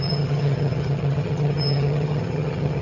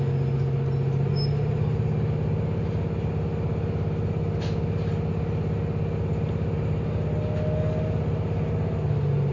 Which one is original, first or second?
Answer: second